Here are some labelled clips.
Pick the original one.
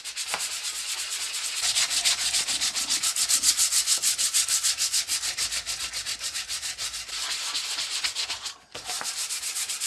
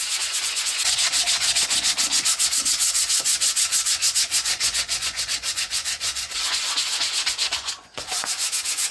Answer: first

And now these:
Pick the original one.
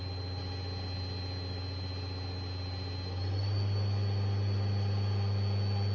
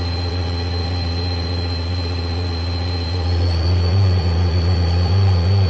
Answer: first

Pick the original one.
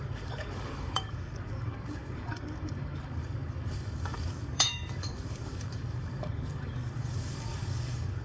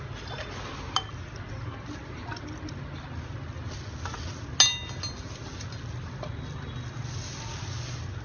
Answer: second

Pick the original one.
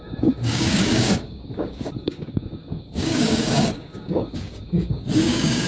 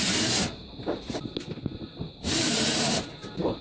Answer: second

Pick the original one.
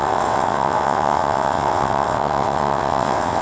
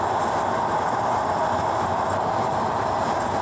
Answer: second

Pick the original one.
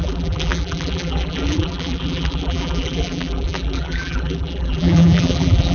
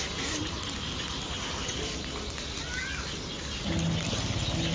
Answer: second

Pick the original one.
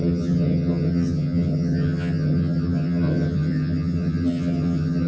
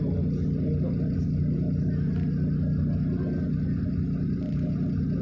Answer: second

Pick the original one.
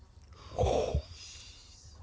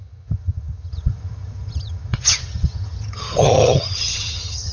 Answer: first